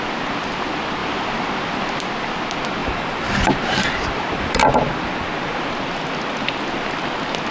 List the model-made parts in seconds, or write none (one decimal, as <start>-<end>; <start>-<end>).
2.8-4.6